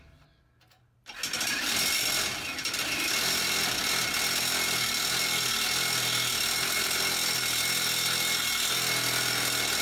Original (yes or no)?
yes